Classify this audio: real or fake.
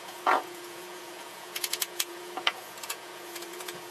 fake